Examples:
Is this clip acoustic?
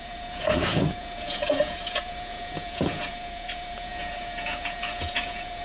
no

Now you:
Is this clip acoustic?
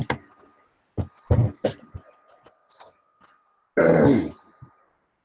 yes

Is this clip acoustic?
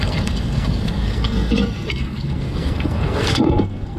no